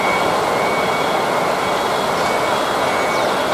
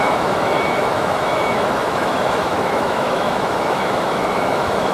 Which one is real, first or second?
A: first